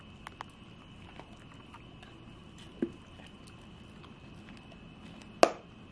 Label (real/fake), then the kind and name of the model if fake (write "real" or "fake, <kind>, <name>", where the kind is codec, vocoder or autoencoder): real